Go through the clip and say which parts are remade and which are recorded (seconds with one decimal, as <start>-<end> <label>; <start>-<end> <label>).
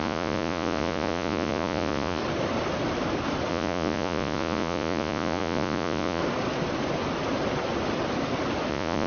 0.0-2.2 remade; 2.2-3.5 recorded; 3.5-6.2 remade; 6.2-8.7 recorded; 8.7-9.1 remade